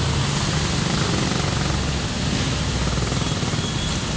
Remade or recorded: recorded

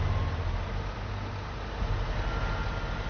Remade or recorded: recorded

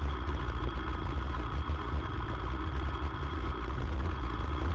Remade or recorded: remade